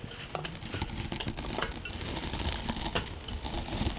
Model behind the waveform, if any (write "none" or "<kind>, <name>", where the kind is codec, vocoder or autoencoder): none